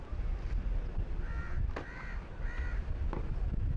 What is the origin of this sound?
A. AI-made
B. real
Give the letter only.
B